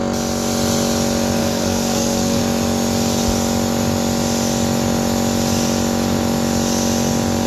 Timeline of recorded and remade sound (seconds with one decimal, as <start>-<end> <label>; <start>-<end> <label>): 0.0-1.4 recorded; 1.4-2.4 remade; 2.4-7.5 recorded